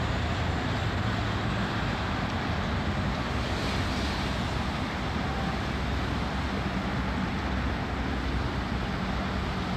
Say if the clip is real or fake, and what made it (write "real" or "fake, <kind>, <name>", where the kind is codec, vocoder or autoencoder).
real